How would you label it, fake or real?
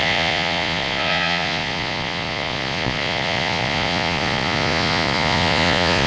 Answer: fake